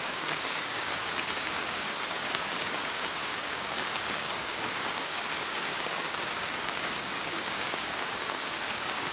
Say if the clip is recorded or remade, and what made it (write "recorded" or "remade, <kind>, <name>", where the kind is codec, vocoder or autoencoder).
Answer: remade, codec, DAC